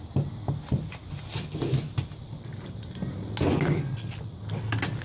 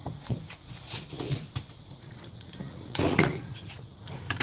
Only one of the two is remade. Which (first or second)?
second